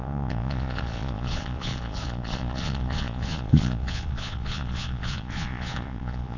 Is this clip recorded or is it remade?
remade